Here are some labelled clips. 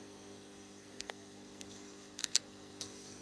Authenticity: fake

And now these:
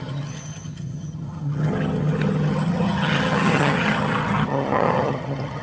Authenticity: fake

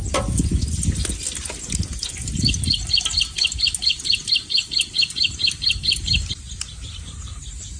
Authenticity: real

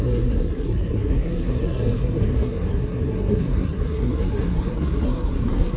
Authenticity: fake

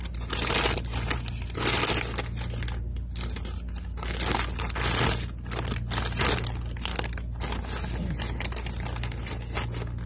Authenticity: real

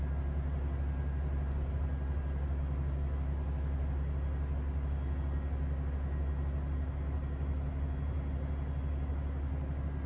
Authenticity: real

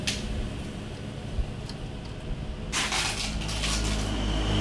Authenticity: real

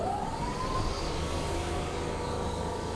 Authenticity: fake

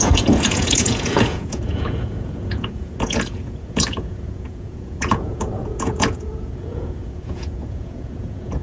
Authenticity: fake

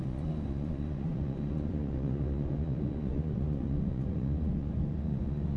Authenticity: fake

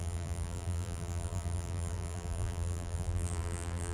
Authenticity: fake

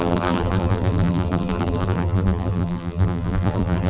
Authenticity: fake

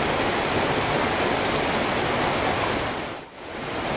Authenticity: real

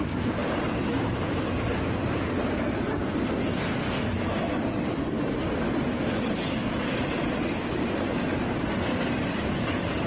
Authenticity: fake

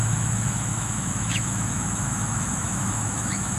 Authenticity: fake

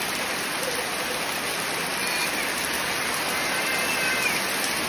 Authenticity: real